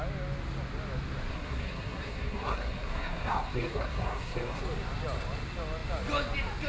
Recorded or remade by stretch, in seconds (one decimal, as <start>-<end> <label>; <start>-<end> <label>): 0.0-1.3 recorded; 1.3-4.6 remade; 4.6-6.7 recorded